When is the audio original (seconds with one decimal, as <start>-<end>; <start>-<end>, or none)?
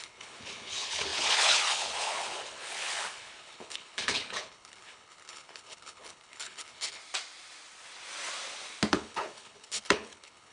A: 7.0-8.9